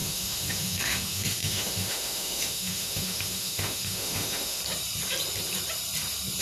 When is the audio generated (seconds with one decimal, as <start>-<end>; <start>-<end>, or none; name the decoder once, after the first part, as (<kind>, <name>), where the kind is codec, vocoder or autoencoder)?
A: 0.0-4.6 (autoencoder, DAC-VAE)